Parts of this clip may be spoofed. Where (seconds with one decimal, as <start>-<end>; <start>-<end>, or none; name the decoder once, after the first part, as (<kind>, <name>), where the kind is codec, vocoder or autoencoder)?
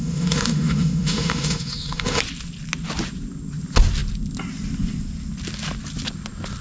0.0-2.2 (autoencoder, DAC-VAE)